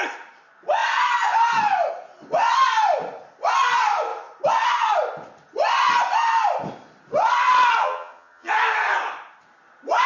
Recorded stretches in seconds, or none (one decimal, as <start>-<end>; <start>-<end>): 0.0-7.8; 8.5-10.1